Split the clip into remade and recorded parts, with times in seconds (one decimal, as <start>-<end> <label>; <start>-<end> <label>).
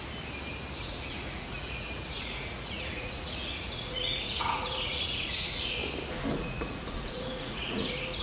0.0-0.8 recorded; 0.8-5.8 remade; 5.8-6.4 recorded; 6.4-8.2 remade